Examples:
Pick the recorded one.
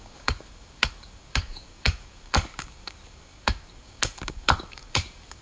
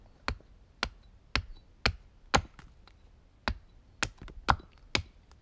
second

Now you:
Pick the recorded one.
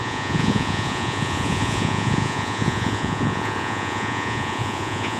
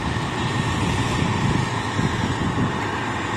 second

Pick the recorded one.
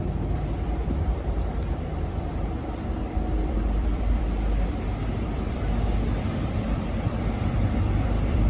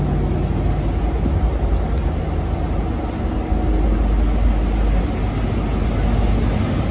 second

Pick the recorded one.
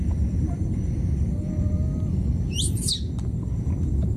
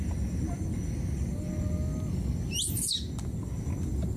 second